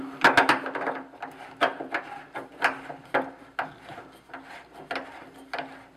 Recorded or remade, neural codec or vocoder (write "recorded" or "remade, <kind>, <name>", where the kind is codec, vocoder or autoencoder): recorded